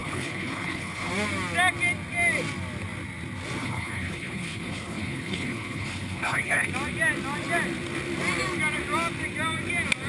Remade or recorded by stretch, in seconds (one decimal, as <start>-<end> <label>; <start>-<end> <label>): 0.0-1.1 remade; 1.1-3.6 recorded; 3.6-6.7 remade; 6.7-10.1 recorded